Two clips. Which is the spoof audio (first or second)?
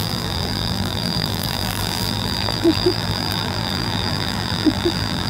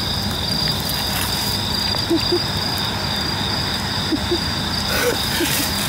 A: first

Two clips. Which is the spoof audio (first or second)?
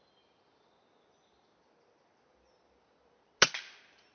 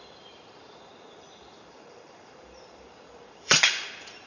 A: second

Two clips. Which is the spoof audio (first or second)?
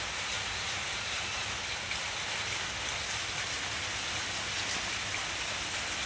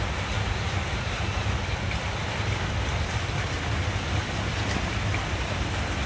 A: second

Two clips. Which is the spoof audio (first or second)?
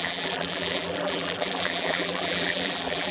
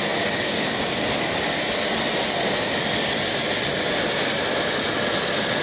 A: first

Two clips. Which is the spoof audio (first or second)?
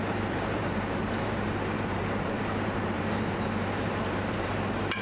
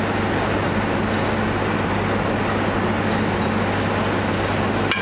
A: first